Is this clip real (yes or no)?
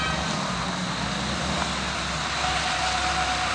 yes